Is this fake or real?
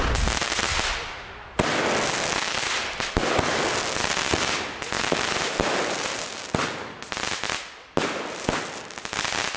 real